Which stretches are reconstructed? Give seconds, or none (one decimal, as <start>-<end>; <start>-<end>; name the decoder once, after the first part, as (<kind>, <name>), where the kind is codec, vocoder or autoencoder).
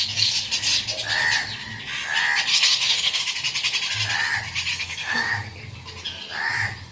2.5-3.2 (codec, SNAC); 4.7-5.6